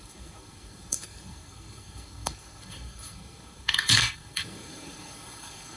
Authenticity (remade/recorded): remade